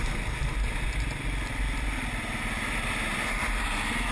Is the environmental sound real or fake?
real